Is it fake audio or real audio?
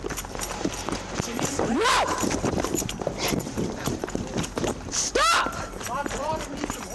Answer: fake